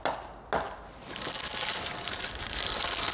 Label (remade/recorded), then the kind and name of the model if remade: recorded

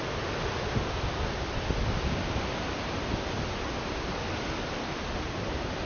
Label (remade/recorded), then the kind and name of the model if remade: recorded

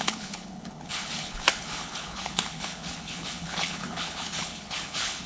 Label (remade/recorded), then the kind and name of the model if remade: remade, codec, HILCodec